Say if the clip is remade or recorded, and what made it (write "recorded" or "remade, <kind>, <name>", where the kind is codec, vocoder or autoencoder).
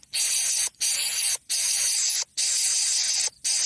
recorded